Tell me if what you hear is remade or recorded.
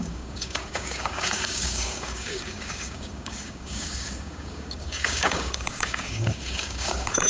remade